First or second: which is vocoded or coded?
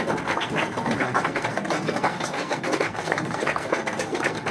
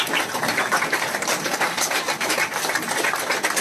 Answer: first